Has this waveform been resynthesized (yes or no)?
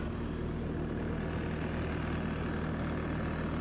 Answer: no